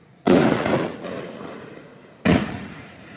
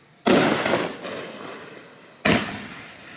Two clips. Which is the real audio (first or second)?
second